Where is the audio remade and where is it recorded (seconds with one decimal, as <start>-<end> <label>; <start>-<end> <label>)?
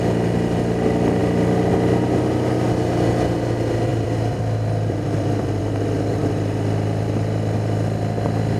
0.0-1.2 recorded; 1.2-1.7 remade; 1.7-3.9 recorded; 3.9-5.6 remade; 5.6-8.6 recorded